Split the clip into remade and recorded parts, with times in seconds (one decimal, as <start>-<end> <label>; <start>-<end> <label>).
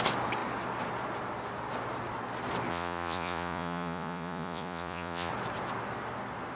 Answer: 0.0-2.7 recorded; 2.7-5.3 remade; 5.3-6.6 recorded